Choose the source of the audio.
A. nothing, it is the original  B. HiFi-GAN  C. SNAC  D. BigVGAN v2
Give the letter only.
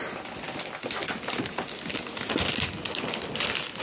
A